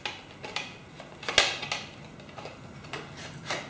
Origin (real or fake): real